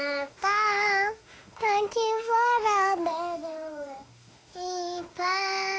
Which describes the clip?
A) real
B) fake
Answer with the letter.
B